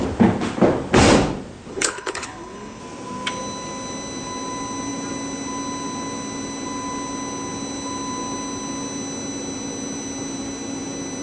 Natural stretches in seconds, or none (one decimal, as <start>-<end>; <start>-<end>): 0.0-1.7; 2.8-11.2

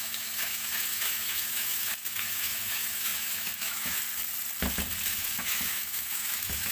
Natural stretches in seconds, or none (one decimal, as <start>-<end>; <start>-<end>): 4.0-5.1

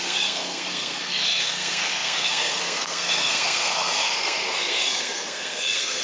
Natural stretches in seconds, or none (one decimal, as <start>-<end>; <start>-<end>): none

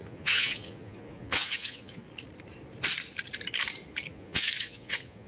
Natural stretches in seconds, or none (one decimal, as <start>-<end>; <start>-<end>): 2.0-4.1

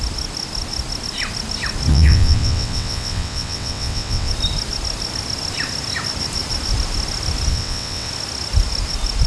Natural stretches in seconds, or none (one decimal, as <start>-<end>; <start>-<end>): 0.0-1.9; 4.3-7.5; 8.1-9.3

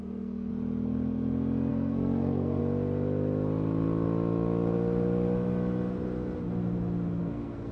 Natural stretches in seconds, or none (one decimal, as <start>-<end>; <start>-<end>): 0.5-1.7; 2.6-7.2

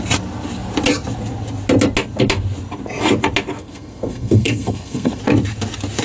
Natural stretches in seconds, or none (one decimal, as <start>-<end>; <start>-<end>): 0.0-3.6; 5.2-6.0